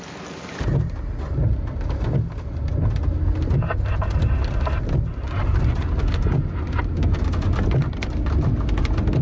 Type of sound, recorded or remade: recorded